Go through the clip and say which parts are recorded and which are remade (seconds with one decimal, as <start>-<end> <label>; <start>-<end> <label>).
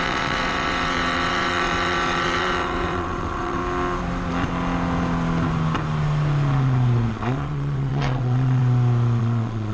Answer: 0.0-3.6 remade; 3.6-7.1 recorded; 7.1-8.6 remade; 8.6-9.2 recorded; 9.2-9.7 remade